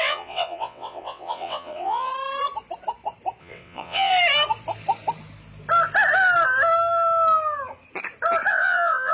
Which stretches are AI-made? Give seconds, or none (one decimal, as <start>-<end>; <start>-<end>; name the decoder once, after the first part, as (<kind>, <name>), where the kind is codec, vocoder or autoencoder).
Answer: 0.0-2.1 (vocoder, WaveNeXt); 3.4-4.1; 8.5-9.1